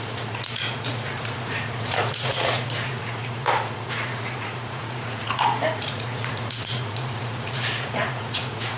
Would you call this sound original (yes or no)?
no